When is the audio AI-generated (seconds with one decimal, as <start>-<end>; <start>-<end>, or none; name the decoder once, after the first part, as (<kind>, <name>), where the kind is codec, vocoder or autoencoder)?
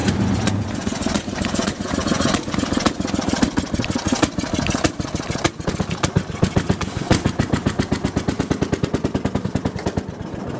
0.0-2.5 (vocoder, Vocos)